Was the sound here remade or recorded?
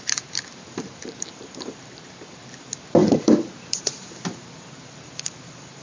remade